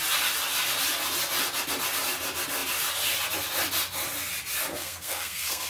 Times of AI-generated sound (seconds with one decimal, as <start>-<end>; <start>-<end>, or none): 4.7-5.7